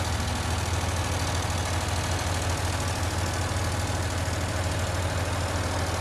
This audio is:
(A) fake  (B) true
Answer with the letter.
B